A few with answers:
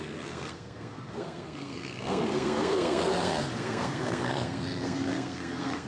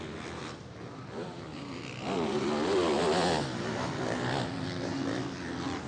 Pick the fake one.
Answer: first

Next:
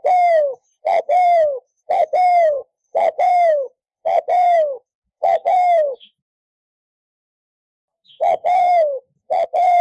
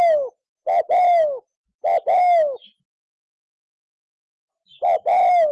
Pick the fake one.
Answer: first